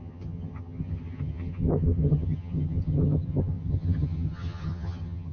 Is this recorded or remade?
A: remade